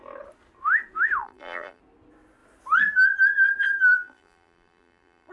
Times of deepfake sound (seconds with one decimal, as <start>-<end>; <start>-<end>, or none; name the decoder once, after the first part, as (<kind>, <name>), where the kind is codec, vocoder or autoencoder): 1.2-1.8 (vocoder, BigVGAN v2); 3.9-5.3